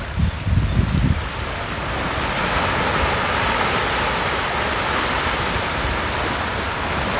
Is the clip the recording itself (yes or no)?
yes